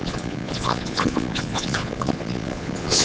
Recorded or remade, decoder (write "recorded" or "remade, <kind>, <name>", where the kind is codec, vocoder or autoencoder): remade, vocoder, Vocos